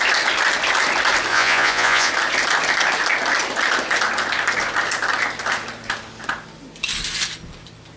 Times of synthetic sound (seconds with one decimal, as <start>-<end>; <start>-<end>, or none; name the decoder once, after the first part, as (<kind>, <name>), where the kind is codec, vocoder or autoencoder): 1.3-2.1 (vocoder, Vocos)